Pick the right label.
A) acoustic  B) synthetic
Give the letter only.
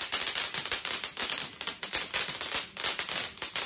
A